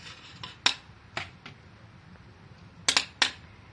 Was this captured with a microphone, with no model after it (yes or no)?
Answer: yes